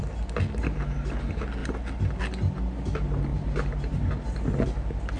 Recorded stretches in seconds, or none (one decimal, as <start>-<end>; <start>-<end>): 0.0-1.6; 2.2-3.3; 4.4-5.2